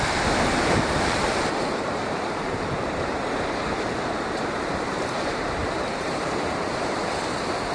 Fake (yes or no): yes